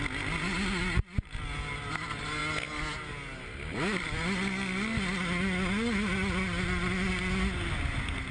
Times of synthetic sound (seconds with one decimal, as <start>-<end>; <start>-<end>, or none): none